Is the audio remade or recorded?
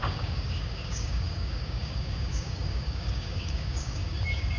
remade